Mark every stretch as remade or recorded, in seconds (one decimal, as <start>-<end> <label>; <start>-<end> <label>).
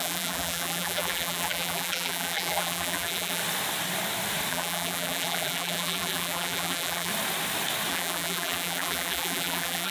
0.0-3.4 remade; 3.4-4.5 recorded; 4.5-7.1 remade; 7.1-7.9 recorded; 7.9-9.9 remade